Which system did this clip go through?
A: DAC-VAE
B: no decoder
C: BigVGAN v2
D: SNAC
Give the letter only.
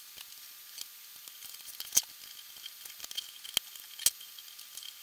B